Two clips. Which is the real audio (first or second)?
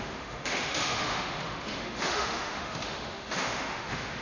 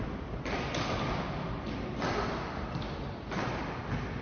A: second